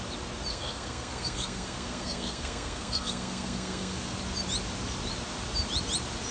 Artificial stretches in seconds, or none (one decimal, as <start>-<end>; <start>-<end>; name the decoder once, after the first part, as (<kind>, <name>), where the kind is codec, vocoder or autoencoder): 0.5-4.2 (codec, SNAC)